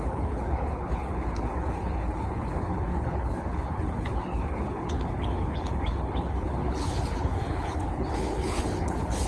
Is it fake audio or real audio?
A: fake